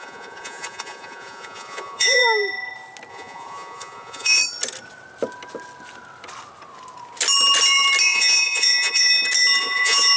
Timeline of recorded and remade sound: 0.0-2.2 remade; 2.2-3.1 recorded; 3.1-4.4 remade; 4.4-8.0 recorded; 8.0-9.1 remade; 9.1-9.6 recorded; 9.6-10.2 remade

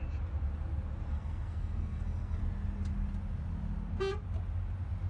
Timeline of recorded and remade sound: 0.0-1.1 recorded; 1.1-2.4 remade; 2.4-5.1 recorded

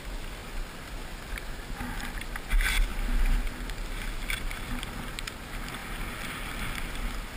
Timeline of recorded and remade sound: 0.0-7.4 recorded

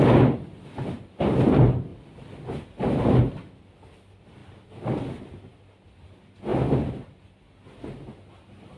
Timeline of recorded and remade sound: 0.0-1.9 recorded; 1.9-3.0 remade; 3.0-8.8 recorded

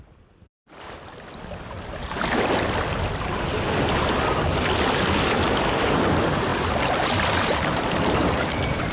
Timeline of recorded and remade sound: 0.0-8.9 recorded